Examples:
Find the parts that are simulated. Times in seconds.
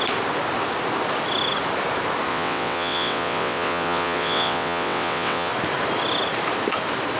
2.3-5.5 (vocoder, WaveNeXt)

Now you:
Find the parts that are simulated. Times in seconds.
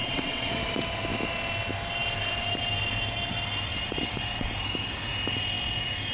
0.0-0.5 (vocoder, WaveNeXt)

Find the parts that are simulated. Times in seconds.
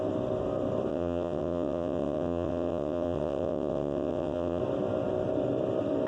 0.9-4.6 (vocoder, WaveNeXt)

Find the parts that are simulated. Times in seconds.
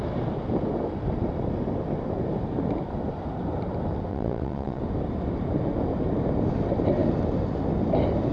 4.1-4.8 (vocoder, WaveNeXt)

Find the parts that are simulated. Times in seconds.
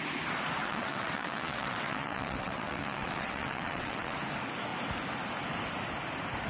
0.6-4.2 (vocoder, WaveNeXt)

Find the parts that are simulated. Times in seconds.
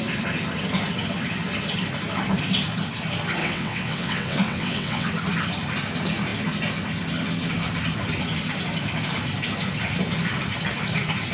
3.4-5.1 (vocoder, WaveNeXt)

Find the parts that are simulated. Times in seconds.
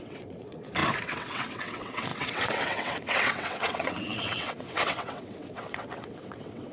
0.0-6.7 (vocoder, WaveNeXt)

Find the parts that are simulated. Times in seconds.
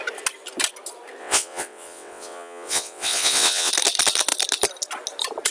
1.2-3.7 (vocoder, WaveNeXt)